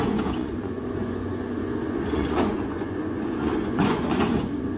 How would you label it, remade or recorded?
remade